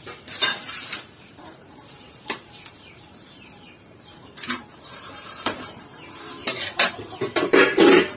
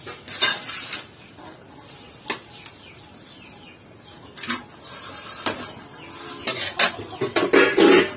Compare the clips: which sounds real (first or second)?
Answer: second